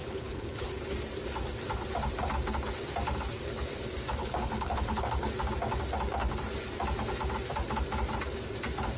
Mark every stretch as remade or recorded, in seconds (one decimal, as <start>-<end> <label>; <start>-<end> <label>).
0.0-0.8 remade; 0.8-4.2 recorded; 4.2-5.3 remade; 5.3-9.0 recorded